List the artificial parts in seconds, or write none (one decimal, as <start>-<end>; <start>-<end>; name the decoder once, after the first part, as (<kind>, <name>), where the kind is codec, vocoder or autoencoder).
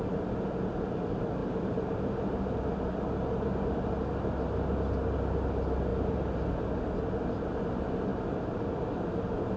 1.4-2.2 (vocoder, BigVGAN v2); 5.9-6.6; 8.1-8.7